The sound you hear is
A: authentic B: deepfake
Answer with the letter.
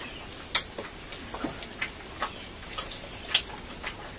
A